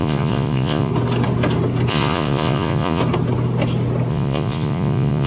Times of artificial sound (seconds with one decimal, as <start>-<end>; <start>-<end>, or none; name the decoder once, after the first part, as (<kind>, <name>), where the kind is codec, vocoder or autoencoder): 0.0-0.9 (vocoder, Vocos); 1.9-3.0; 4.1-5.3